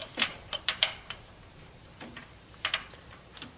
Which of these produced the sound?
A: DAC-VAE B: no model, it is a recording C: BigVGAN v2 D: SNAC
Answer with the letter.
C